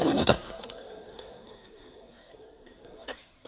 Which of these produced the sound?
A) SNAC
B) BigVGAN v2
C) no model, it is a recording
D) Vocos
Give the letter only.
A